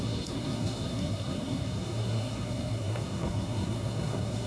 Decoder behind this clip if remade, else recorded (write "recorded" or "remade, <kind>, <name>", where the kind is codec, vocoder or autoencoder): remade, codec, SNAC